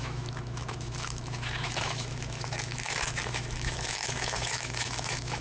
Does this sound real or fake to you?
fake